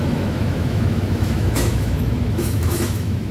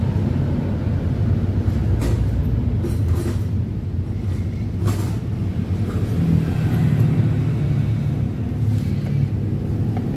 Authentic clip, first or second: second